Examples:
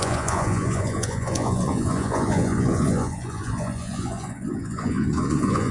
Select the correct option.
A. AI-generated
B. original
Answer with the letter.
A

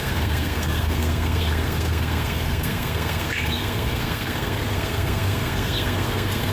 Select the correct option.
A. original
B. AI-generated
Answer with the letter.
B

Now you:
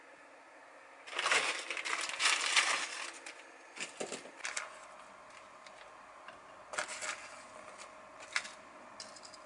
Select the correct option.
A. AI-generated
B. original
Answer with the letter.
B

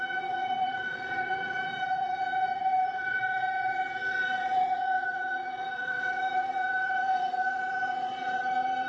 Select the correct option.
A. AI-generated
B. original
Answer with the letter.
A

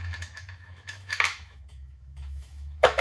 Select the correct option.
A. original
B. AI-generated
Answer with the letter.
B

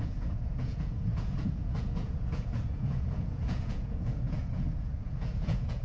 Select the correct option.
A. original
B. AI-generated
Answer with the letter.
B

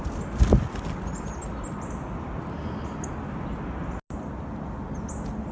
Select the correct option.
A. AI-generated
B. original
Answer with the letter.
B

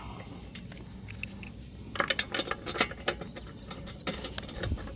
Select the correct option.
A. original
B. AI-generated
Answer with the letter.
A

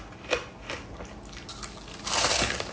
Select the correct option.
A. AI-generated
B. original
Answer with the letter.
B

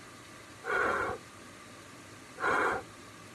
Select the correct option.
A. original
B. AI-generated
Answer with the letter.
A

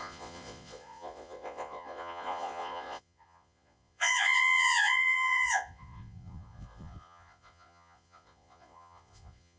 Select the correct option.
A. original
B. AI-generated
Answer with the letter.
B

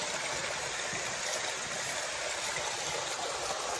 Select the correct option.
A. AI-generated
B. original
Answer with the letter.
B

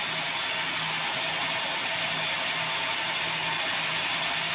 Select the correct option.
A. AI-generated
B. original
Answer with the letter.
B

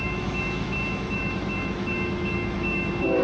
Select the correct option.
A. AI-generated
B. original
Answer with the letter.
A